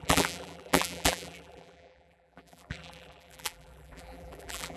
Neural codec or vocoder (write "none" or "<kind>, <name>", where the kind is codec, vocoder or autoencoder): vocoder, BigVGAN v2